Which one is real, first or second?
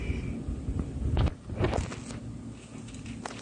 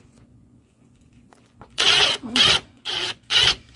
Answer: first